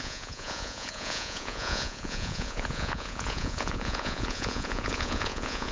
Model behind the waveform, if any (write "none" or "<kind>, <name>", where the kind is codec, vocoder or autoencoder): vocoder, Vocos